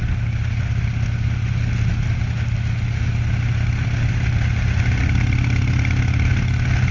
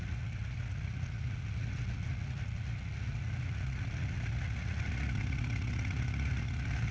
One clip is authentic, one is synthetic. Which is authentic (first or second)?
first